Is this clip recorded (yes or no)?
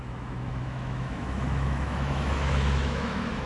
no